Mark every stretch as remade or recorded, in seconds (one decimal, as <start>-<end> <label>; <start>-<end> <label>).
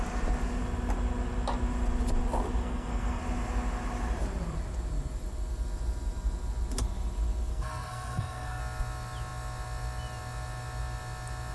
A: 0.0-2.6 recorded; 2.6-3.2 remade; 3.2-7.5 recorded; 7.5-8.6 remade; 8.6-11.5 recorded